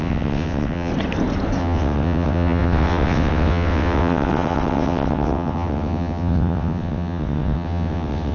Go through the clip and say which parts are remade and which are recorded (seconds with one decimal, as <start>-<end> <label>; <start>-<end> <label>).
0.0-0.9 remade; 0.9-1.6 recorded; 1.6-8.3 remade